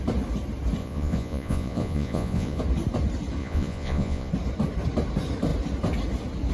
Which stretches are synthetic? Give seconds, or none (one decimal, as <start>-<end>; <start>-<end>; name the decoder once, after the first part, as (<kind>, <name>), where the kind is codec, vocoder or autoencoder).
0.8-2.6 (vocoder, Vocos); 3.4-4.3